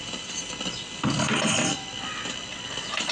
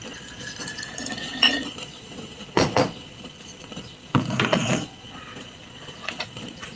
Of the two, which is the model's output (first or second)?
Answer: second